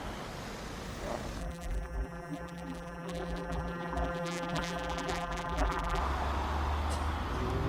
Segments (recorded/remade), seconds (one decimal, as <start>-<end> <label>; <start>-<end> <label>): 0.0-1.4 recorded; 1.4-6.0 remade; 6.0-7.7 recorded